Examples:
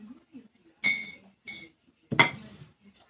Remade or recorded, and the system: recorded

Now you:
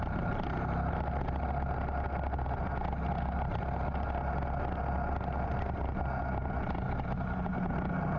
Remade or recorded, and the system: recorded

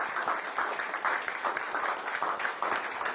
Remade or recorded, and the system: recorded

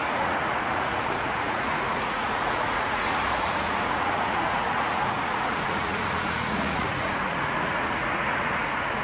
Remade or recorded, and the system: remade, vocoder, Vocos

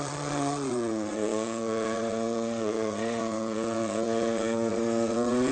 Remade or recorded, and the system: remade, vocoder, Vocos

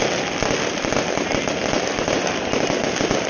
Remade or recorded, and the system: recorded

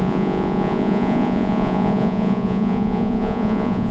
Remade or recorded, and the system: remade, vocoder, Vocos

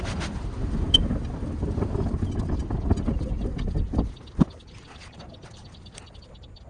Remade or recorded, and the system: recorded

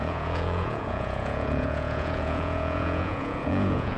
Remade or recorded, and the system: remade, vocoder, Vocos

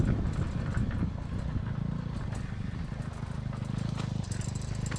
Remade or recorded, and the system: recorded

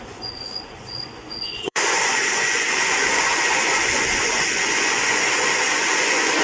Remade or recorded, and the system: remade, vocoder, Vocos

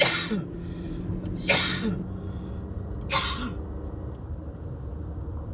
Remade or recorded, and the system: recorded